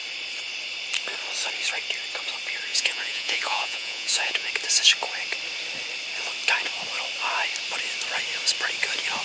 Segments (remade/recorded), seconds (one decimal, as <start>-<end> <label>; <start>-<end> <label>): 0.0-2.7 recorded; 2.7-4.5 remade; 4.5-9.2 recorded